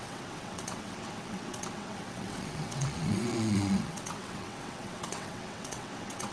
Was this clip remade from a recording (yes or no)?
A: yes